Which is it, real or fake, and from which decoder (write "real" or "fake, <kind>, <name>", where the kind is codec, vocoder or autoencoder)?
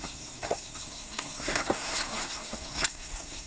fake, codec, SNAC